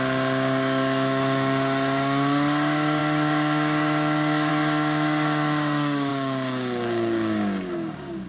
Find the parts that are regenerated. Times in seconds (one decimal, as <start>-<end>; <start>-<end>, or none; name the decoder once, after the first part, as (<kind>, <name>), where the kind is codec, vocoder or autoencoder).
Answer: 0.0-8.3 (codec, DAC)